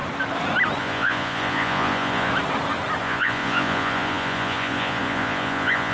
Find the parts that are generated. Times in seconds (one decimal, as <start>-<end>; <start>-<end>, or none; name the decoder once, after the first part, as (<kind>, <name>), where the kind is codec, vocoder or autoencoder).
0.8-2.3 (vocoder, Vocos); 3.0-5.9